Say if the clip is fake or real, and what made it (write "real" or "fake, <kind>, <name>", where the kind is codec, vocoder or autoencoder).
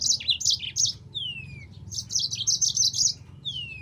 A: real